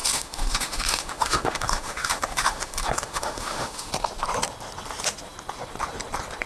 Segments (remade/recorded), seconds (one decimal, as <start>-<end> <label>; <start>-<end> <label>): 0.0-3.9 remade; 3.9-6.5 recorded